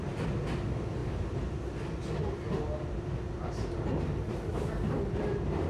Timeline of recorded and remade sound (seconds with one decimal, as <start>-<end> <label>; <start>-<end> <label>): 0.0-5.7 recorded